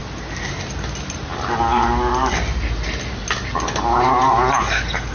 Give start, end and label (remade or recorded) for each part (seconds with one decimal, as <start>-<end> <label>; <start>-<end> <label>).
0.0-5.1 recorded